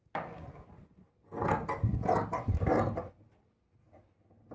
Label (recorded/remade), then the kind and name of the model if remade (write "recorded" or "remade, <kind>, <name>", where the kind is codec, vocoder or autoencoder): recorded